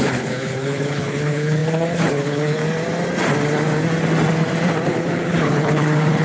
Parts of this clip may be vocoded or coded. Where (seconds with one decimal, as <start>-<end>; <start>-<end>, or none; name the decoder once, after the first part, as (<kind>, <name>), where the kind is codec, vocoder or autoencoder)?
0.0-2.6 (codec, HILCodec); 4.9-6.2